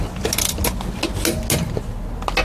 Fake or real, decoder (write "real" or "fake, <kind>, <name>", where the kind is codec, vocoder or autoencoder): real